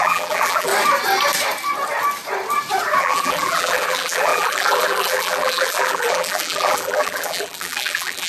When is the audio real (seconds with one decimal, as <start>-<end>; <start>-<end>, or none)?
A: 0.7-3.0